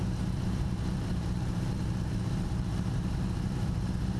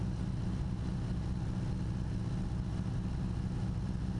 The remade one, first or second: first